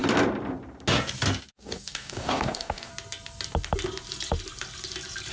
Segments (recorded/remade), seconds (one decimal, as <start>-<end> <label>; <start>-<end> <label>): 0.0-1.5 recorded; 1.5-2.9 remade; 2.9-5.3 recorded